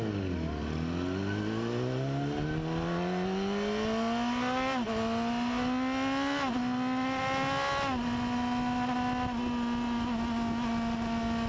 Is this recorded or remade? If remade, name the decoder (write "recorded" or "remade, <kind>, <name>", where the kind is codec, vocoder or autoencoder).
recorded